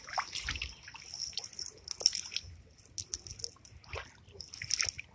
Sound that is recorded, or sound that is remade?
recorded